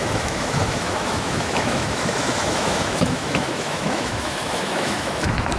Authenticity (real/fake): fake